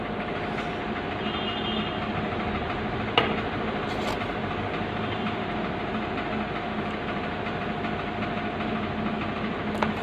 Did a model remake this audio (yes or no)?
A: no